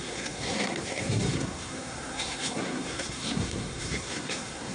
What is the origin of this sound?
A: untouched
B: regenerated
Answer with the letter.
B